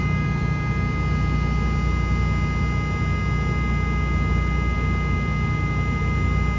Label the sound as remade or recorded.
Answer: recorded